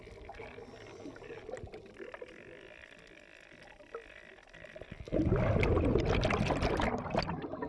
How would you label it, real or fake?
real